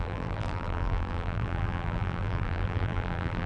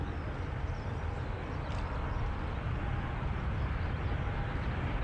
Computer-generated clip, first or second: first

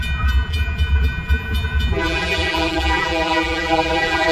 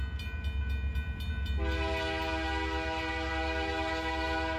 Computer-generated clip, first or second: first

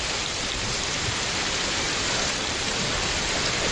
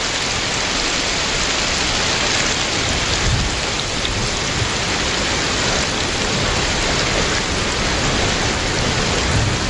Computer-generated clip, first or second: first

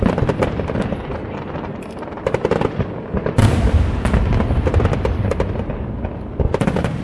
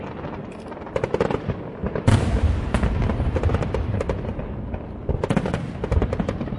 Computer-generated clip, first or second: second